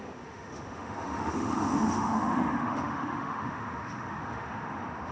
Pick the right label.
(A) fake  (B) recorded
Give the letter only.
A